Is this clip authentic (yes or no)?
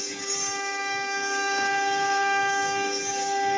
no